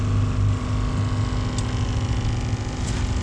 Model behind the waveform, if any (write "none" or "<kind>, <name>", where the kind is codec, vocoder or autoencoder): none